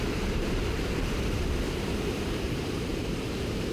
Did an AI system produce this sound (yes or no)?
yes